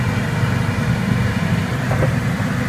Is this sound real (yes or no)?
yes